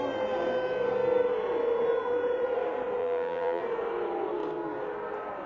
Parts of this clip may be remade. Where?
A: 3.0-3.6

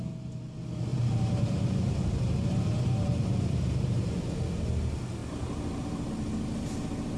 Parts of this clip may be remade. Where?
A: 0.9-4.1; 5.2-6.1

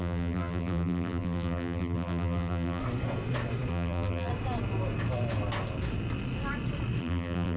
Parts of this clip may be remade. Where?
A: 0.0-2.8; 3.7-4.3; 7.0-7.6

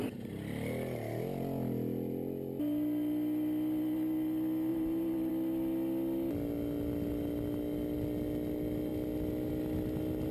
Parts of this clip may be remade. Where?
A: 4.7-5.3